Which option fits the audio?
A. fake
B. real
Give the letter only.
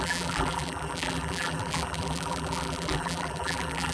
A